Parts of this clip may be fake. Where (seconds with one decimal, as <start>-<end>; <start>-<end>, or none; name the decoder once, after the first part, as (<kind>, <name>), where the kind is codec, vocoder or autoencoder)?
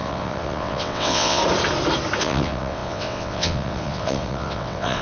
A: 0.0-1.4 (vocoder, WaveNeXt); 2.2-5.0